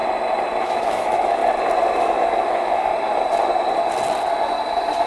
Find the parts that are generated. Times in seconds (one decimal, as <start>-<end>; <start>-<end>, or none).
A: 0.6-1.4; 2.0-2.9